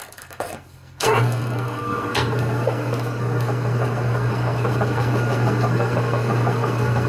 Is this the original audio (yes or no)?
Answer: no